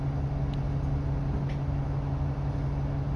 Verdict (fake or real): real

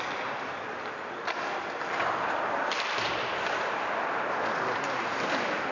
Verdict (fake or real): real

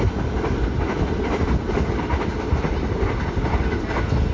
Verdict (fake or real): real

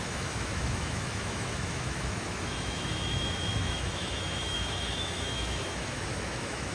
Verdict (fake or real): fake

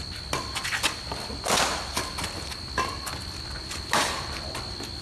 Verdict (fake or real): real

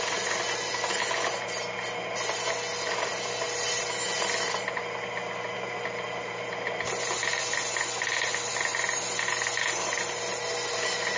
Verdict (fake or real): real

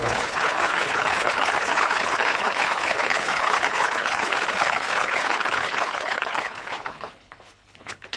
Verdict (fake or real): fake